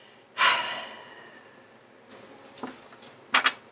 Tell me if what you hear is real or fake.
real